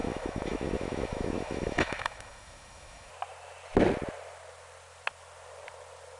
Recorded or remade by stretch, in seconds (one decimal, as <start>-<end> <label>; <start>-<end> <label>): 0.0-3.1 remade; 3.1-6.2 recorded